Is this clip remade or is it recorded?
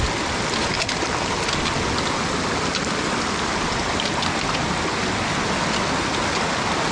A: recorded